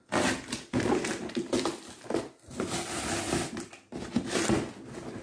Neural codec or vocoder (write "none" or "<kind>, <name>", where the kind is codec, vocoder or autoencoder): none